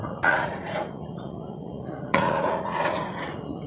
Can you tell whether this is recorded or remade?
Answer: remade